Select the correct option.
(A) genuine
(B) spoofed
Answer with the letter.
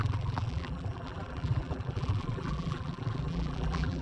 B